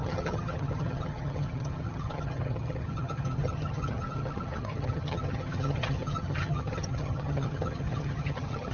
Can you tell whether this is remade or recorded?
remade